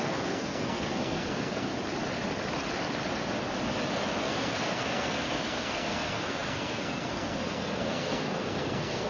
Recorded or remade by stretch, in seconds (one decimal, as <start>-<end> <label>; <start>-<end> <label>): 0.0-1.7 remade; 1.7-3.9 recorded; 3.9-9.1 remade